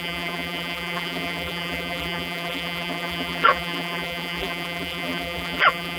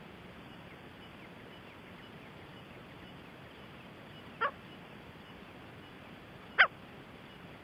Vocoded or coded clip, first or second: first